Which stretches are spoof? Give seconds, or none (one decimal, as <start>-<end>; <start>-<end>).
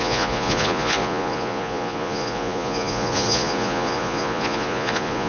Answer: 0.0-5.3